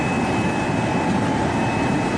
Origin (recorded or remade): recorded